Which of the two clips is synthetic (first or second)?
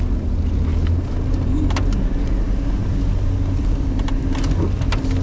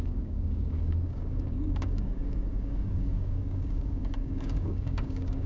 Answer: second